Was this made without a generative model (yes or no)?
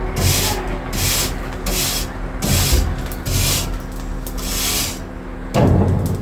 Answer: yes